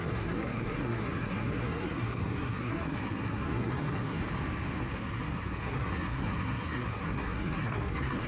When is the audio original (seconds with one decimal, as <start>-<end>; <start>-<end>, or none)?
4.2-4.8